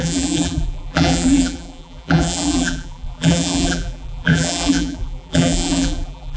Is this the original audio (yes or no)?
no